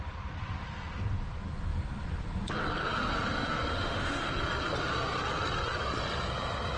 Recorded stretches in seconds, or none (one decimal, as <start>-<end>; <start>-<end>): 0.0-3.7; 4.3-6.8